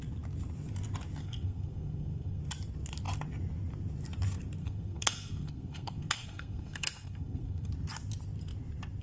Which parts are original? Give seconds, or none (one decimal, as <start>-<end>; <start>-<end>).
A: 0.0-1.2; 2.4-4.6; 7.7-9.0